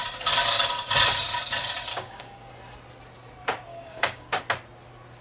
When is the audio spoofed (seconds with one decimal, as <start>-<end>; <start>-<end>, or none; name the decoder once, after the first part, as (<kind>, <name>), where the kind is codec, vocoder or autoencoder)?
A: 1.9-2.5 (codec, DAC); 3.7-4.4